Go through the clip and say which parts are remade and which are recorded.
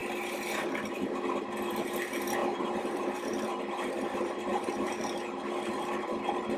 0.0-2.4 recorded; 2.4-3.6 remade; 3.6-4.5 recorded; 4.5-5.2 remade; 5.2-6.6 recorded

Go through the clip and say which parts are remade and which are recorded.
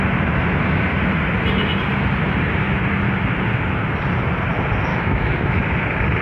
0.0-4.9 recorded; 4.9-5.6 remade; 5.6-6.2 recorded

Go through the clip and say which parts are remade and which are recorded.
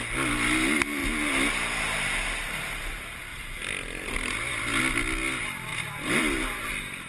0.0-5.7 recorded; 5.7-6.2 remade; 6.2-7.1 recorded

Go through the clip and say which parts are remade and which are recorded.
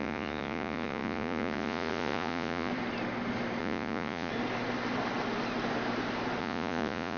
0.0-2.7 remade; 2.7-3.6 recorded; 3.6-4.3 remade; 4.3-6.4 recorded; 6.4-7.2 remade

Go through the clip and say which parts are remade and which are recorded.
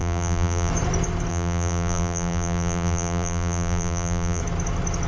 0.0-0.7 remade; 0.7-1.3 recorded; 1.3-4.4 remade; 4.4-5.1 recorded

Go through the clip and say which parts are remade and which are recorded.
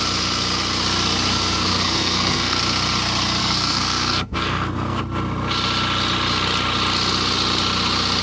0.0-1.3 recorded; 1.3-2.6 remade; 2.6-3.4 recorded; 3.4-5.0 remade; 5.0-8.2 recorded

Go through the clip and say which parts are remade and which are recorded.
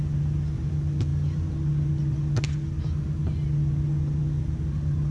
0.0-5.1 recorded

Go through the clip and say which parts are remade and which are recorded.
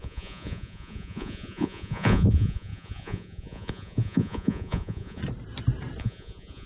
0.0-5.2 remade; 5.2-6.0 recorded; 6.0-6.7 remade